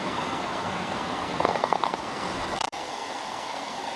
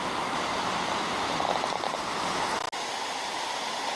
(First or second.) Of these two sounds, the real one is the second